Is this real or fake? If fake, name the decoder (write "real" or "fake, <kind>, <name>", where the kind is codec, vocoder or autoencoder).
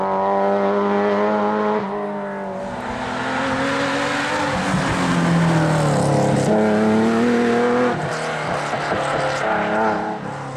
real